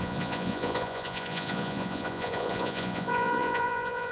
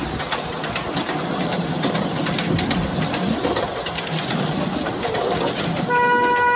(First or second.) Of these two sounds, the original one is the second